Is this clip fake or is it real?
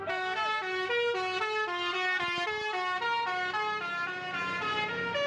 real